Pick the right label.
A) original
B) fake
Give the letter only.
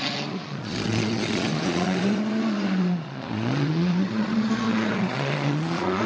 B